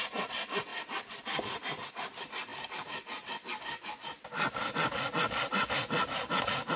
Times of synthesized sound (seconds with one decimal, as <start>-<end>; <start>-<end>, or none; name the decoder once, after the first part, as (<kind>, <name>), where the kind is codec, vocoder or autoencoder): none